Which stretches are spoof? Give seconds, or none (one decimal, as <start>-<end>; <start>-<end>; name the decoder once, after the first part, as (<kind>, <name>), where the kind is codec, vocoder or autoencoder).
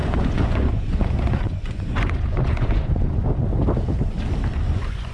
0.0-3.2 (vocoder, Vocos); 4.5-5.1